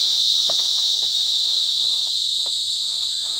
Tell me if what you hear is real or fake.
fake